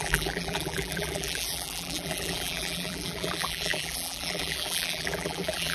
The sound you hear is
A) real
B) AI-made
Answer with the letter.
B